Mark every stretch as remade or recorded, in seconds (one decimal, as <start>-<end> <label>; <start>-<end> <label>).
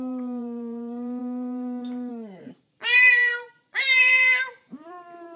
0.0-5.4 remade